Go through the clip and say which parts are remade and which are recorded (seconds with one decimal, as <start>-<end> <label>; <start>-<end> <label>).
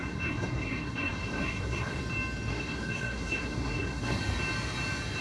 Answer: 0.0-2.0 remade; 2.0-2.5 recorded; 2.5-4.2 remade; 4.2-5.2 recorded